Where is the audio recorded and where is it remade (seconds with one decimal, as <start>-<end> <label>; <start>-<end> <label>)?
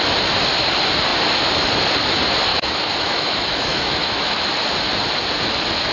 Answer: 0.0-2.5 recorded; 2.5-4.5 remade; 4.5-5.9 recorded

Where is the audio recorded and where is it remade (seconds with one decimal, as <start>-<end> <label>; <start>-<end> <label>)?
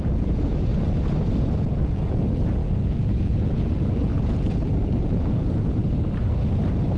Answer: 0.0-0.7 remade; 0.7-1.4 recorded; 1.4-4.1 remade; 4.1-5.0 recorded; 5.0-5.8 remade; 5.8-7.0 recorded